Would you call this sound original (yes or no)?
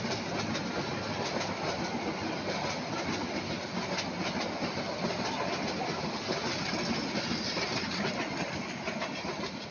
yes